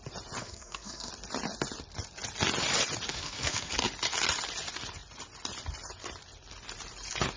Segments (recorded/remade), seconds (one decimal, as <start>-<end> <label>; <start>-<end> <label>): 0.0-0.4 recorded; 0.4-1.1 remade; 1.1-3.1 recorded; 3.1-3.7 remade; 3.7-7.4 recorded